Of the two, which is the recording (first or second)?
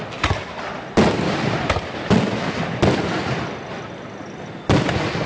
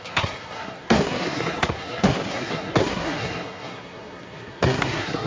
first